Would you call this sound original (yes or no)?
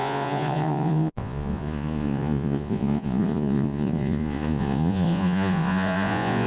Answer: no